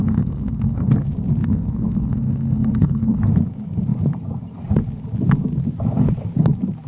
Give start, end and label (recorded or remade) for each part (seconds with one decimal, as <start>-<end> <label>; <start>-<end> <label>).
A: 0.0-0.9 remade; 0.9-1.4 recorded; 1.4-3.2 remade; 3.2-6.9 recorded